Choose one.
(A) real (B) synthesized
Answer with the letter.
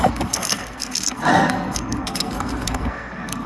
B